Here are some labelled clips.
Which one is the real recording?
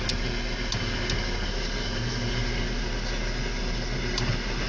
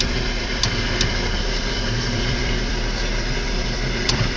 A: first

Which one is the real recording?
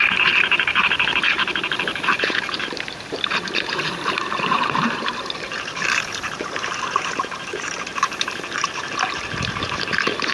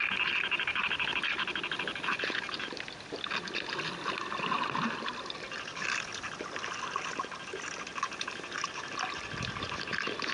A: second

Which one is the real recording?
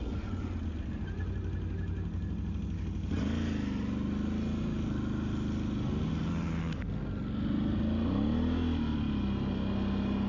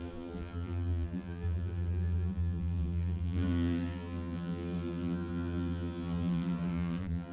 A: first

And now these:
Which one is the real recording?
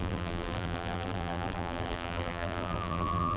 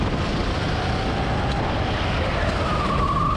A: second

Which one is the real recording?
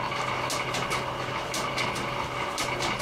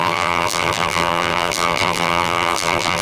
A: first